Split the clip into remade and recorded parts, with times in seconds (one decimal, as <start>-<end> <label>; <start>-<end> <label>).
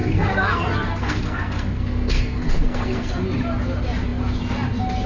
0.0-3.1 remade; 3.1-5.1 recorded